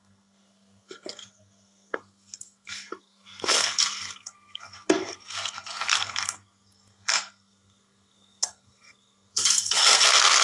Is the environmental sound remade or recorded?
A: remade